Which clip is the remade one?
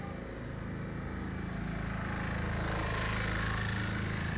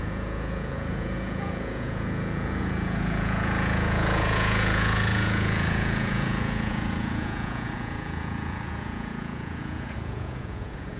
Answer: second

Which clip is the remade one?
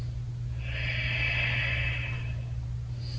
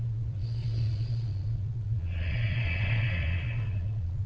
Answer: second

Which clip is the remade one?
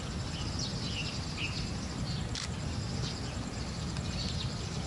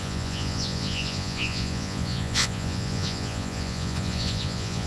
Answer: second